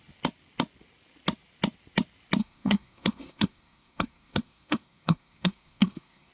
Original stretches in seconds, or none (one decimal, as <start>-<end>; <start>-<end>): 0.0-2.4